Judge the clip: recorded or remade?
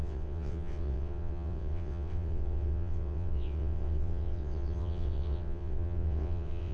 remade